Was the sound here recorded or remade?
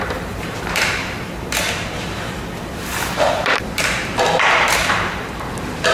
remade